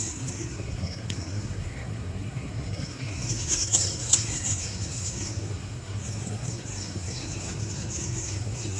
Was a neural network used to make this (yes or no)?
yes